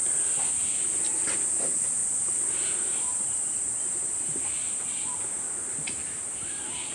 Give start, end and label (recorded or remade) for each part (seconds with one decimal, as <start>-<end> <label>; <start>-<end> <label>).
0.0-6.9 recorded